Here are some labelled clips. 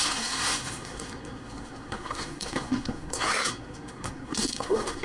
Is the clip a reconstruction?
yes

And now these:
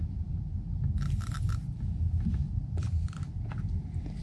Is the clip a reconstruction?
no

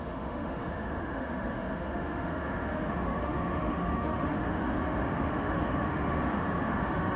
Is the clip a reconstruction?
yes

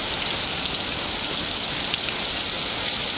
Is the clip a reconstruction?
no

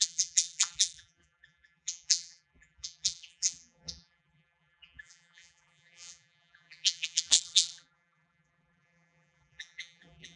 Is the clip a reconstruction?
yes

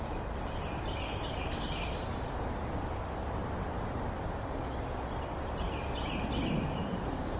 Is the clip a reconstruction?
yes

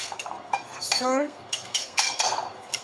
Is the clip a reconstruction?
yes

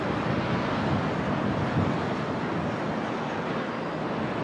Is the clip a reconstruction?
no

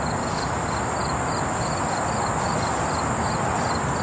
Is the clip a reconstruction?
no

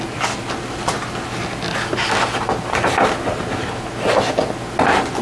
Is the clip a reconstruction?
no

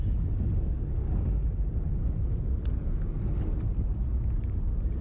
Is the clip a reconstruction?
no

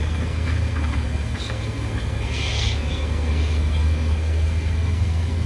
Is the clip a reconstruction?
yes